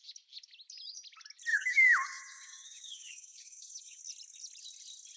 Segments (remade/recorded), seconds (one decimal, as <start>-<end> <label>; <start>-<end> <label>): 0.0-1.5 recorded; 1.5-4.0 remade; 4.0-5.2 recorded